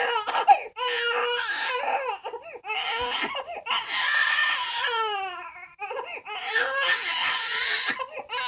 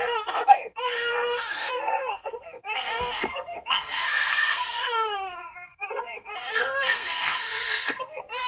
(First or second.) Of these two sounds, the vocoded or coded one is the second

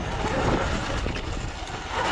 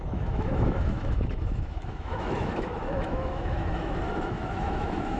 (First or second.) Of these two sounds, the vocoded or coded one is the second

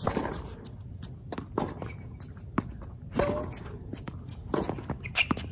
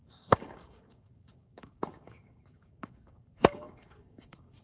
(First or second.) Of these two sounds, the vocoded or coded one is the second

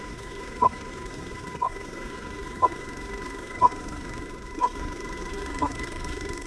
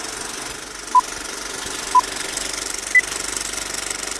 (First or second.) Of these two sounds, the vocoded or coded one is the first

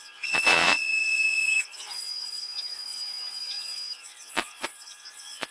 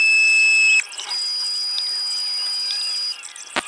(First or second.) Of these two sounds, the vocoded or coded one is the first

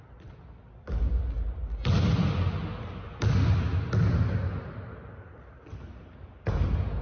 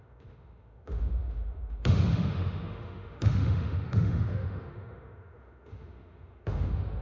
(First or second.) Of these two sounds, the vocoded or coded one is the second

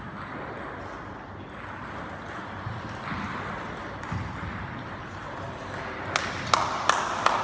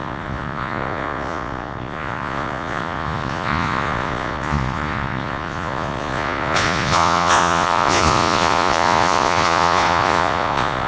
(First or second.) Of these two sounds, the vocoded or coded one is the second